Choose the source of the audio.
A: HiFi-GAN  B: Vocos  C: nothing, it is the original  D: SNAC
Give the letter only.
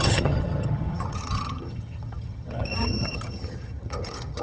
A